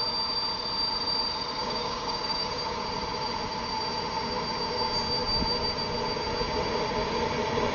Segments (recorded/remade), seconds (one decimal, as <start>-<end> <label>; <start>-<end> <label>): 0.0-1.6 recorded; 1.6-2.8 remade; 2.8-7.7 recorded